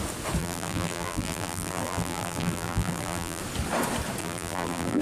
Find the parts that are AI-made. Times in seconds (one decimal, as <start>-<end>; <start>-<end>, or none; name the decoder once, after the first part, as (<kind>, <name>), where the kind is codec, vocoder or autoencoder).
0.4-3.4 (vocoder, BigVGAN v2); 4.2-5.0